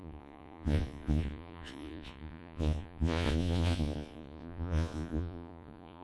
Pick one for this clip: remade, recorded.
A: remade